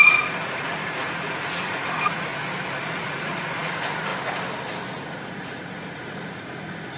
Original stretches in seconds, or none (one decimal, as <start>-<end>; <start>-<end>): 2.3-2.8; 4.1-4.9